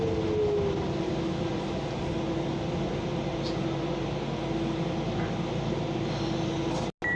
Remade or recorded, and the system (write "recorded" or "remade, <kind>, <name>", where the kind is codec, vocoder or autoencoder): recorded